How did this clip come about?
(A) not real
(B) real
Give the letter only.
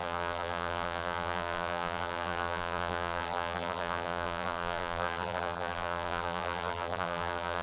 A